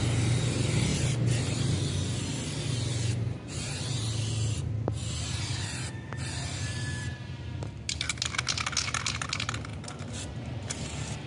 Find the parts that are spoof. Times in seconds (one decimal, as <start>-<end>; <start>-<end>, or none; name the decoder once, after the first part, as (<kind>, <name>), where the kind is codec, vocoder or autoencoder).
0.9-1.9 (vocoder, BigVGAN v2); 2.9-3.8